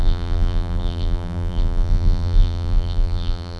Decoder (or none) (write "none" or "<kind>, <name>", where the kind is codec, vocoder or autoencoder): vocoder, BigVGAN v2